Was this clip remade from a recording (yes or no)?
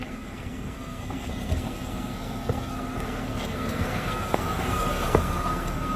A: yes